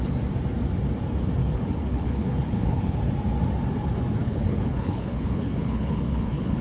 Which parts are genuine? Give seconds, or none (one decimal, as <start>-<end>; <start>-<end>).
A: 0.0-1.4; 3.0-4.2